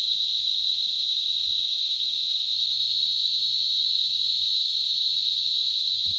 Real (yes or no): no